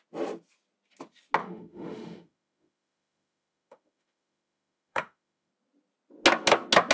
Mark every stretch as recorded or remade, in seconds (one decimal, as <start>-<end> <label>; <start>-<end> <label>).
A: 0.0-1.4 recorded; 1.4-5.5 remade; 5.5-6.9 recorded